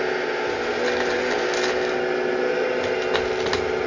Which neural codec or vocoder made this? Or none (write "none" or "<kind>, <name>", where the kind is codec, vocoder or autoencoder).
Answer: none